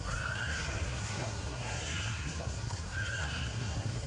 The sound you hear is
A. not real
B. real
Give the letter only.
A